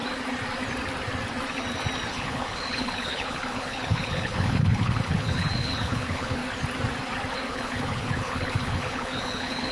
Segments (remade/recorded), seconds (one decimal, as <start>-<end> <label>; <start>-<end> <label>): 0.0-2.1 recorded; 2.1-6.4 remade; 6.4-7.5 recorded; 7.5-9.7 remade